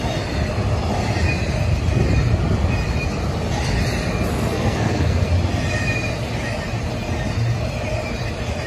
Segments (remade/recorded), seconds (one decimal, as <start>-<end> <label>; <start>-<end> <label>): 0.0-4.3 recorded; 4.3-5.3 remade; 5.3-8.7 recorded